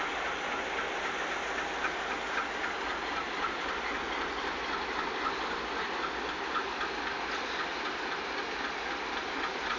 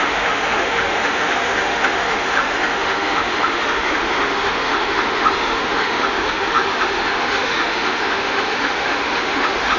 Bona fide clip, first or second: first